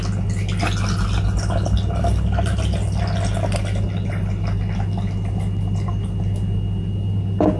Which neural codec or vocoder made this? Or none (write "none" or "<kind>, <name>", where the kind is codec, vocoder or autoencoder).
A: none